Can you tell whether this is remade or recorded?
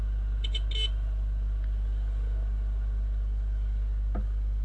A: recorded